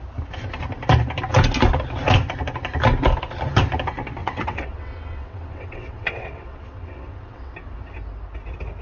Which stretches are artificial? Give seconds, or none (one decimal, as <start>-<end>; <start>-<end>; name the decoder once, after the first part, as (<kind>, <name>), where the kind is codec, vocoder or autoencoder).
4.2-7.5 (vocoder, WaveNeXt)